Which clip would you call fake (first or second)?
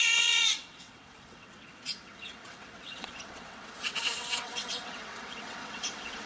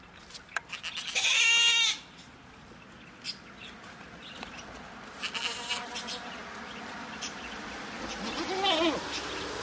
first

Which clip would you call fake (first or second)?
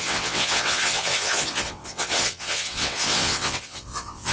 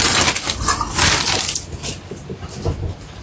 first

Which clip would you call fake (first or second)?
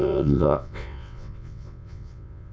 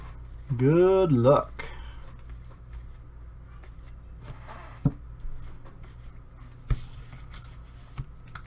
first